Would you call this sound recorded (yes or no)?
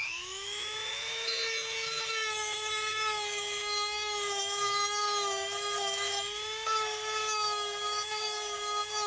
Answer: no